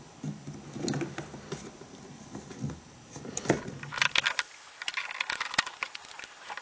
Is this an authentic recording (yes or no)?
yes